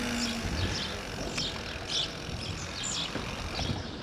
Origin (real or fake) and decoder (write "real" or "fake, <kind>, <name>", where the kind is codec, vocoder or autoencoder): real